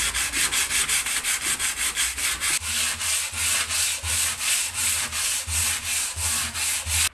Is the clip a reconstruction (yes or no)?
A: no